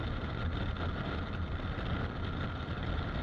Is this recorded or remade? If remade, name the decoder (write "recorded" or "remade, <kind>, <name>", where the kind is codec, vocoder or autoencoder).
recorded